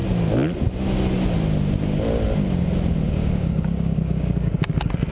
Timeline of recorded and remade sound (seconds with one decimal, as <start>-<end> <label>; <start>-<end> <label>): 0.0-3.1 recorded; 3.1-5.1 remade

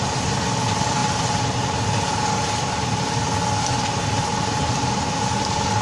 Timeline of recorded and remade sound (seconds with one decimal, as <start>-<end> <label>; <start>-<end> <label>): 0.0-5.8 recorded

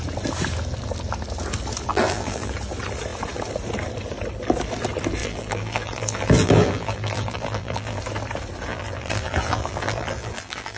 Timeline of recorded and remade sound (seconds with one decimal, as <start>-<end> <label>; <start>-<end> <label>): 0.0-1.9 recorded; 1.9-2.5 remade; 2.5-5.2 recorded; 5.2-8.0 remade; 8.0-8.7 recorded; 8.7-10.8 remade

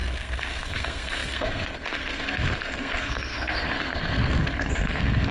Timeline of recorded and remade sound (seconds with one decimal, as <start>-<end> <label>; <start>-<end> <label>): 0.0-5.3 remade

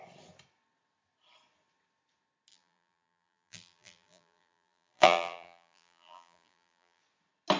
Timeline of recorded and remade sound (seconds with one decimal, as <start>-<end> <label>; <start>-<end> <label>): 0.0-2.5 recorded; 2.5-7.0 remade; 7.0-7.6 recorded

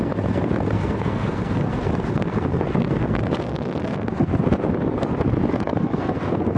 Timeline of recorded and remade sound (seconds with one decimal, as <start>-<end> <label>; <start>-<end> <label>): 0.0-4.3 remade; 4.3-5.5 recorded; 5.5-6.6 remade

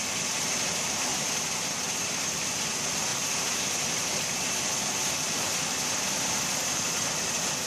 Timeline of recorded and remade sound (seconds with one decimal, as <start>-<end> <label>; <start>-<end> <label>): 0.0-3.1 recorded; 3.1-6.3 remade; 6.3-7.7 recorded

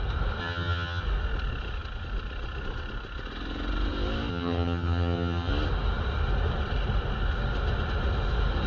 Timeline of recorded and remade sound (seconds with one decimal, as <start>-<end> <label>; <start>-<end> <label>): 0.0-0.4 recorded; 0.4-1.0 remade; 1.0-4.3 recorded; 4.3-5.5 remade; 5.5-8.7 recorded